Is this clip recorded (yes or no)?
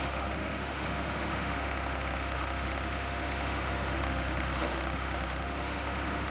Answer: no